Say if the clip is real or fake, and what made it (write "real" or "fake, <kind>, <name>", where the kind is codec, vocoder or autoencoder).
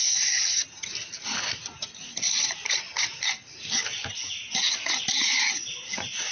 real